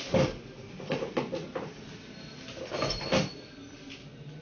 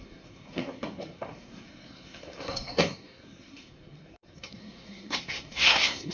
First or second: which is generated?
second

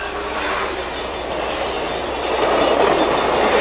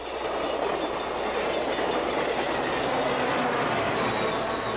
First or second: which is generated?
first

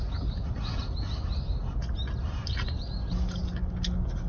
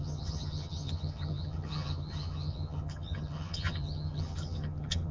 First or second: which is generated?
second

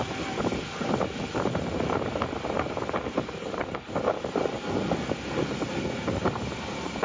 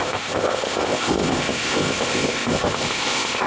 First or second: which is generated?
second